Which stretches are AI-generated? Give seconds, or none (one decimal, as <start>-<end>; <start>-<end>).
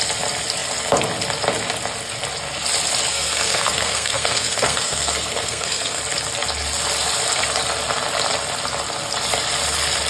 3.1-6.0